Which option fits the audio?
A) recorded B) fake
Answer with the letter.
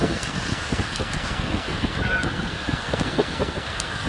B